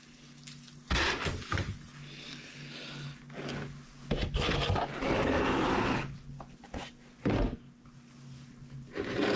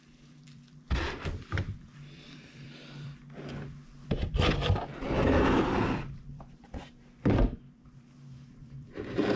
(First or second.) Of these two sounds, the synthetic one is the second